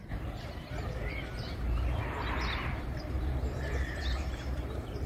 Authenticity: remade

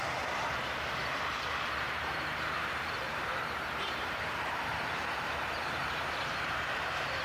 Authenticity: remade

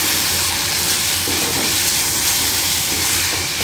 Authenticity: remade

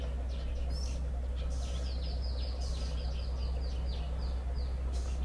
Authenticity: recorded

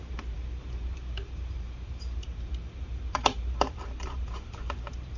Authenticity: remade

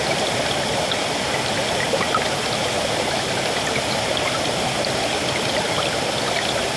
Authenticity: recorded